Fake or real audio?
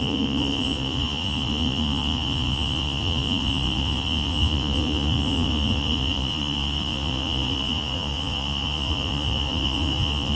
fake